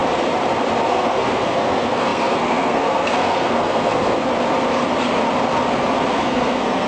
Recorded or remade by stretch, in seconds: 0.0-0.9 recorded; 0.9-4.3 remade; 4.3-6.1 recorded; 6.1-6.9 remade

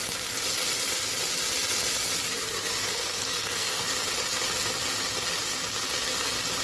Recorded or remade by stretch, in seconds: 0.0-2.8 recorded; 2.8-3.8 remade; 3.8-6.6 recorded

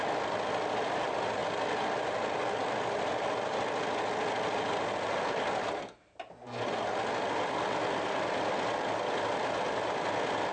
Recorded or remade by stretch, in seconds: 0.0-10.5 recorded

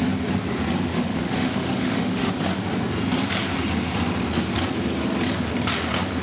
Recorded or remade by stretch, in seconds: 0.0-0.9 recorded; 0.9-2.3 remade; 2.3-6.2 recorded

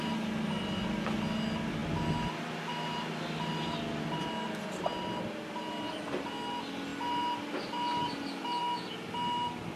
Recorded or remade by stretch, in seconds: 0.0-9.8 recorded